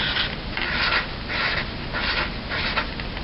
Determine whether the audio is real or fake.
real